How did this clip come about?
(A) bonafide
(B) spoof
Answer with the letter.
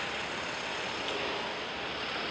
A